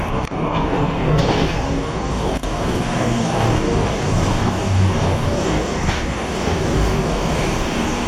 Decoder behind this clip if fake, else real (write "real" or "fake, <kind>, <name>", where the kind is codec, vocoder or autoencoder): fake, codec, DAC